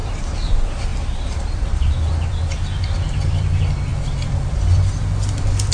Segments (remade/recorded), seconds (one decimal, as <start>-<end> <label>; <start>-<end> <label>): 0.0-0.5 recorded; 0.5-5.7 remade